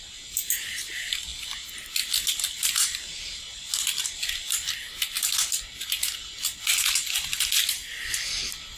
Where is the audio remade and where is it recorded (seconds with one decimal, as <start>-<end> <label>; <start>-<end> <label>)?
0.0-8.8 recorded

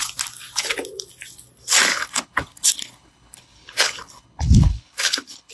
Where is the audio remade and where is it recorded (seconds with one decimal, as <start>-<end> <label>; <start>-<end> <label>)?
0.0-1.9 recorded; 1.9-5.5 remade

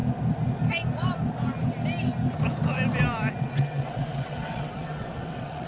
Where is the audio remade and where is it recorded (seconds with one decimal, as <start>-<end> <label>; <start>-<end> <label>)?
0.0-3.4 recorded; 3.4-5.7 remade

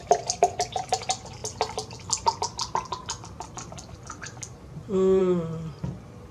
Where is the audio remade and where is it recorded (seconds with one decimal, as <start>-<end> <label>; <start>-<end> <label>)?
0.0-6.3 recorded

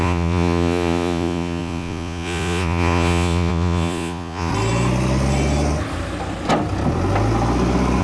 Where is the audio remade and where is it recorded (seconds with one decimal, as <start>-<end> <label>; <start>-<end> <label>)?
0.0-4.5 remade; 4.5-8.0 recorded

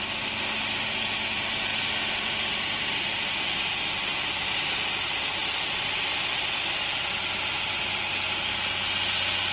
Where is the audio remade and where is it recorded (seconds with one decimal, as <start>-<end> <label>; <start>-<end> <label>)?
0.0-1.7 recorded; 1.7-4.1 remade; 4.1-5.4 recorded; 5.4-7.8 remade; 7.8-9.5 recorded